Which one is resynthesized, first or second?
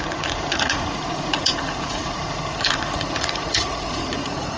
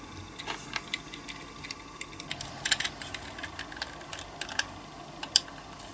first